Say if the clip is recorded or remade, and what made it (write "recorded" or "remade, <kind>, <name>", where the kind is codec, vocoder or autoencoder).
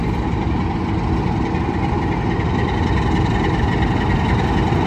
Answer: recorded